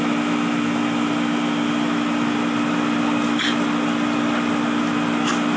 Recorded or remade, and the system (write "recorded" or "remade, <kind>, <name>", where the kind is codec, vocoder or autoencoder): recorded